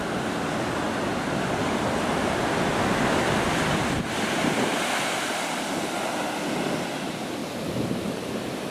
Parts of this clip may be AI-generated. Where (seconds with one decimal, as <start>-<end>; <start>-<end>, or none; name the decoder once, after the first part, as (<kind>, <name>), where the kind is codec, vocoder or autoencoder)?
0.0-4.7 (vocoder, BigVGAN v2); 6.2-7.4; 8.1-8.7